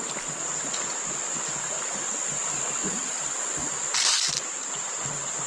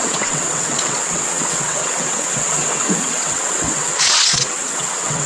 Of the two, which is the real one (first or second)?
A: first